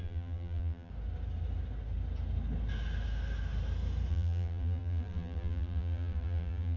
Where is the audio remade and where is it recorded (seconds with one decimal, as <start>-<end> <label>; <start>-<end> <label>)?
0.0-0.9 remade; 0.9-4.1 recorded; 4.1-6.8 remade